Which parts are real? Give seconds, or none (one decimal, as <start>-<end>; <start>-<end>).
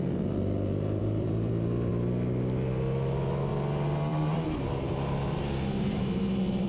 0.0-1.0; 1.5-4.1; 6.2-6.7